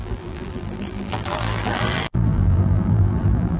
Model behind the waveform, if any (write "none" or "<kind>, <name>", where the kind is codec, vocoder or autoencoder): vocoder, BigVGAN v2